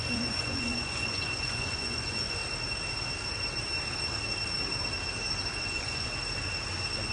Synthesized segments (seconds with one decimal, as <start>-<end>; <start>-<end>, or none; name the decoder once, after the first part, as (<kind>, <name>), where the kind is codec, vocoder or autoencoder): 0.0-2.4 (vocoder, Vocos); 5.6-6.2